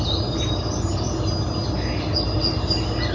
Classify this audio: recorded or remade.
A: recorded